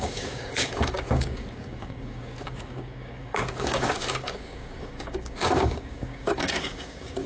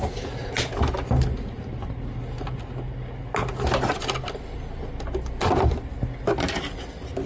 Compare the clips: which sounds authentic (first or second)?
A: second